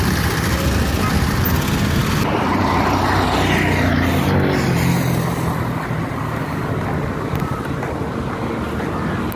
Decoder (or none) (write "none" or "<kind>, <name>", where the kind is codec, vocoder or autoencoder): none